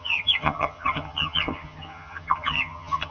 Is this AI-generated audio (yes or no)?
yes